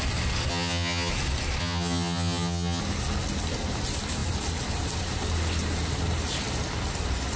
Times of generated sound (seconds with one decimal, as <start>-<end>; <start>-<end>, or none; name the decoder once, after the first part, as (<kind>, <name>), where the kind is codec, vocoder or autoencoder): 0.5-1.1 (vocoder, HiFi-GAN); 1.6-2.8